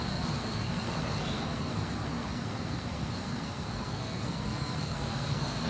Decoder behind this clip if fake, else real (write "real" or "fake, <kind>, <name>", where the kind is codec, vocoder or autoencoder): fake, codec, SNAC